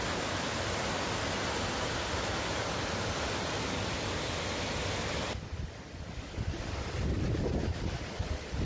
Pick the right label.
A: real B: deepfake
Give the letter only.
A